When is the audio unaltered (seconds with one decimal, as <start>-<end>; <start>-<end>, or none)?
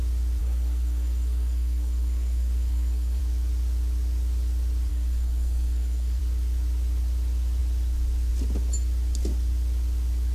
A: 0.0-0.4; 3.2-4.9; 6.2-10.3